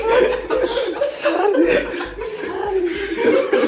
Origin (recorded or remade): remade